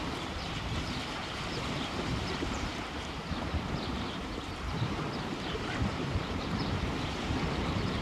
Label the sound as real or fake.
fake